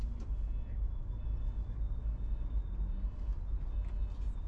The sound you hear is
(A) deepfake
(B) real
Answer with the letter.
B